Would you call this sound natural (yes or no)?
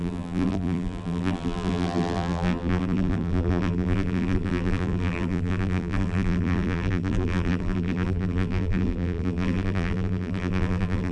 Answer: no